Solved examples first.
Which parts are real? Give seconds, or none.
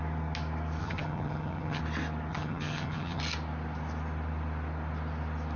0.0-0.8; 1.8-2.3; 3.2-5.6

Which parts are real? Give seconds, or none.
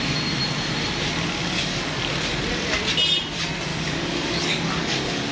0.0-1.4; 2.0-3.7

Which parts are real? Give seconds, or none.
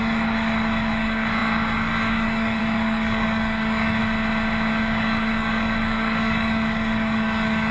4.0-4.7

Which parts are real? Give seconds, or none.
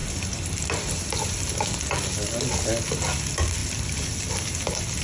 0.0-5.0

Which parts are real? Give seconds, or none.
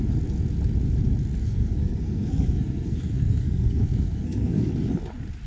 0.0-1.4; 4.7-5.5